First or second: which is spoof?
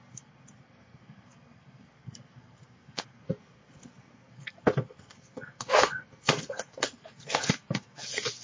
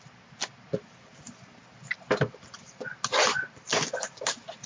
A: first